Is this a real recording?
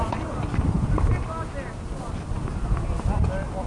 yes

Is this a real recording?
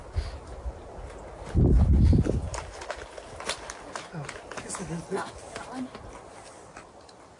yes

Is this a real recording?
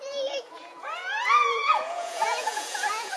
no